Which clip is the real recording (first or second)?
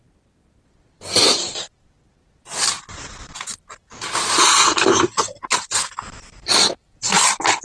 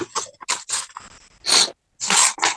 second